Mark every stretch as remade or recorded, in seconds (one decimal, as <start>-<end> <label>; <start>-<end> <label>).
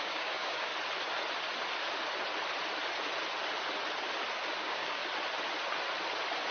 0.0-0.7 remade; 0.7-4.6 recorded; 4.6-5.0 remade; 5.0-6.5 recorded